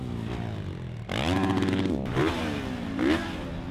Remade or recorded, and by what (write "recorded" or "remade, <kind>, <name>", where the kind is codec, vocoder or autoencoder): recorded